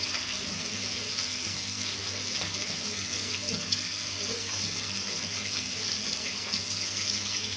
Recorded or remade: remade